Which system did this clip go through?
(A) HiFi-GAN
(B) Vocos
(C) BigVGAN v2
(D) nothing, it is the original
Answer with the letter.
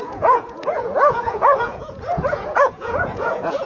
B